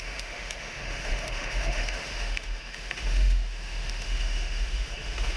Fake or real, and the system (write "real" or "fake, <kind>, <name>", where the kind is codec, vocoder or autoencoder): fake, autoencoder, DAC-VAE